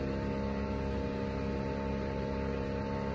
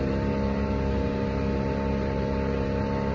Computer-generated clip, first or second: second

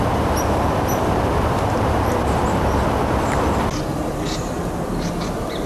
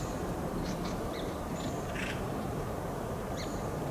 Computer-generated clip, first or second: second